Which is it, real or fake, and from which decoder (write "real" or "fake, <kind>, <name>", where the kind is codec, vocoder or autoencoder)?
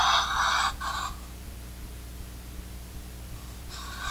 fake, vocoder, BigVGAN v2